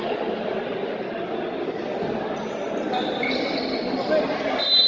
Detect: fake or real real